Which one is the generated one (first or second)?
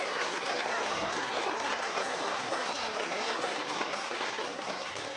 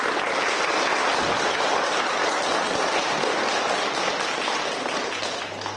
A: first